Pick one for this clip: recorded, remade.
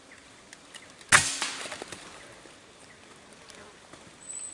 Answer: recorded